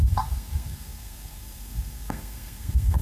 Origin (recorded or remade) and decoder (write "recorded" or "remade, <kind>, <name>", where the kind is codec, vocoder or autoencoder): remade, codec, SNAC